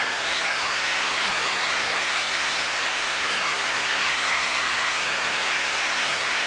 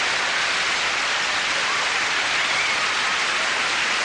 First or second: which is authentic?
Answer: second